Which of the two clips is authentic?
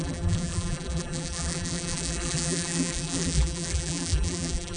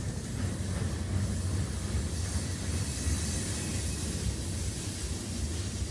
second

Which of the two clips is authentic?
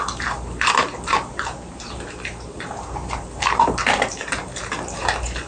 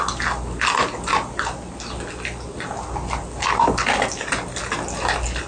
second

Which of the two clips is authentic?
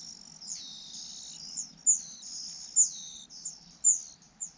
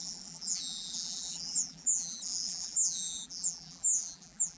first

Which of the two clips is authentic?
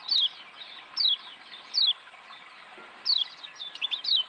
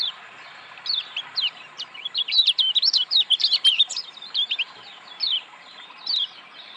first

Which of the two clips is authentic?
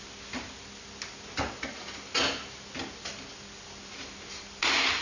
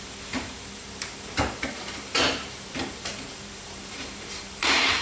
first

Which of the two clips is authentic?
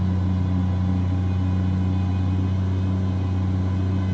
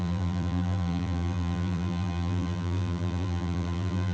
first